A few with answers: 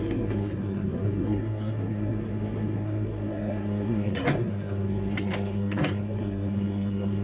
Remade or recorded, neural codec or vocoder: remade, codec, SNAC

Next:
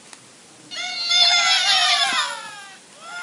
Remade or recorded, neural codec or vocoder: recorded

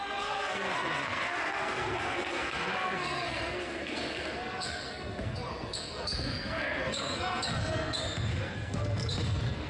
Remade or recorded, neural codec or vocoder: remade, codec, SNAC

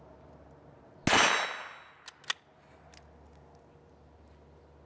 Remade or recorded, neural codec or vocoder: recorded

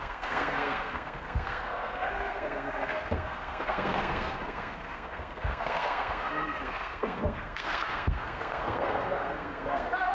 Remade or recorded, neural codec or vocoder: remade, codec, SNAC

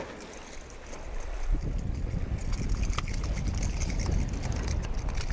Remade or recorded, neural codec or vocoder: recorded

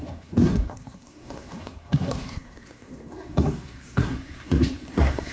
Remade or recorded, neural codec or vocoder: remade, codec, SNAC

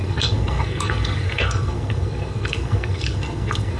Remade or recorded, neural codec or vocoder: remade, codec, SNAC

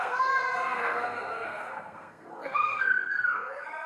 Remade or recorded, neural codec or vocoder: remade, codec, SNAC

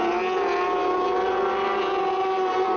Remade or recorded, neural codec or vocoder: recorded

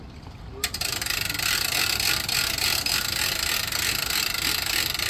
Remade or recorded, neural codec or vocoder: recorded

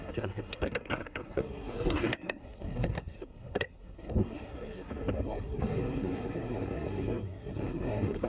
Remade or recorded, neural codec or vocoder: remade, codec, SNAC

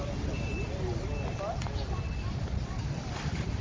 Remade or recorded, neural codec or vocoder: recorded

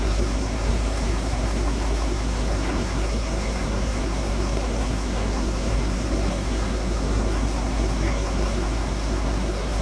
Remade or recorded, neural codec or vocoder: remade, codec, SNAC